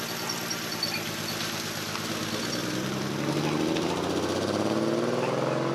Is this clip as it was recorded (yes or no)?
yes